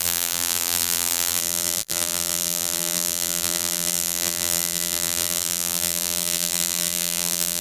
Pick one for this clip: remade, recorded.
remade